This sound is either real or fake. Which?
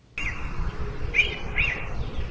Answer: real